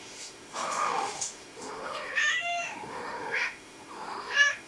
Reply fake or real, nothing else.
fake